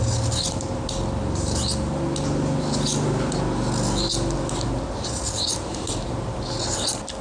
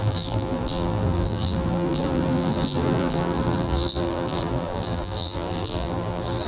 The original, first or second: first